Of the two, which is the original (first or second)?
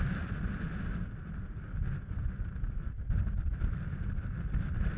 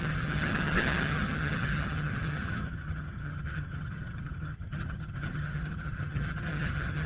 first